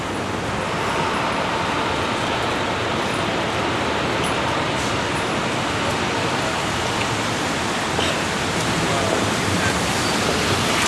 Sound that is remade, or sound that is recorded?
recorded